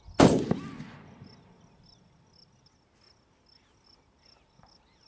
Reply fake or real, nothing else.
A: real